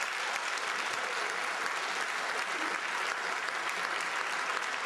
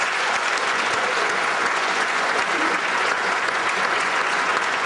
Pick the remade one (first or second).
second